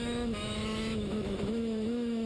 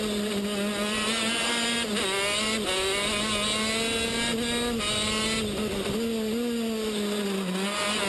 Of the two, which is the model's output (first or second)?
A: first